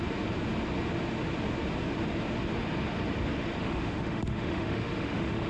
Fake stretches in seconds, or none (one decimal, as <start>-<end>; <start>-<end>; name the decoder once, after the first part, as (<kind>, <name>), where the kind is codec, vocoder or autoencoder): 3.6-5.5 (autoencoder, DAC-VAE)